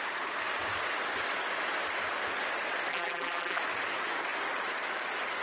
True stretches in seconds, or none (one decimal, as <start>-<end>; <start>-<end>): 0.0-2.9; 3.6-5.4